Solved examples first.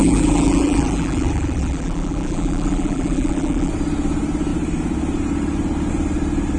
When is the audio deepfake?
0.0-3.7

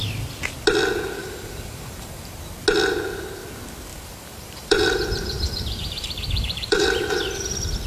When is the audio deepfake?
1.2-2.3; 3.9-7.2